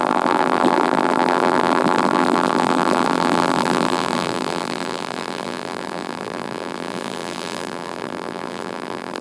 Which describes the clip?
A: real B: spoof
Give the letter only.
B